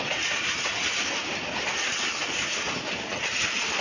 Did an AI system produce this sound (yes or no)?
no